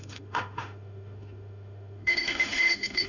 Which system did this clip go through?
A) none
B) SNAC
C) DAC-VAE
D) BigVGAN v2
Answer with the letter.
C